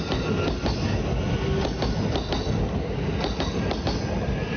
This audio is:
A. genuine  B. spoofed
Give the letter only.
A